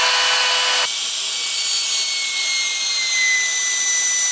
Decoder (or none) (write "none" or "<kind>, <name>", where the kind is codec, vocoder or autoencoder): none